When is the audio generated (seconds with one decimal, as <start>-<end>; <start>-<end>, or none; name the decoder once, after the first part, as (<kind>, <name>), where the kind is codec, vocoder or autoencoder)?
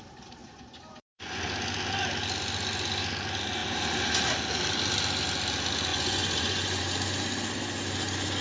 0.4-1.5 (vocoder, Vocos); 5.9-6.8